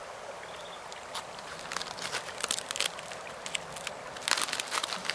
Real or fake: real